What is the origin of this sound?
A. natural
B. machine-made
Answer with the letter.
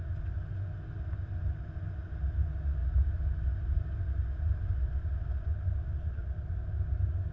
A